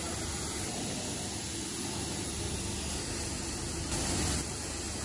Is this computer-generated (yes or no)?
no